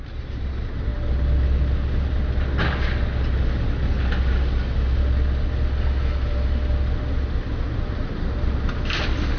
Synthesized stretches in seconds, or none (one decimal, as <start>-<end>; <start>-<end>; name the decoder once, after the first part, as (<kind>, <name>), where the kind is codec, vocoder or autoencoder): none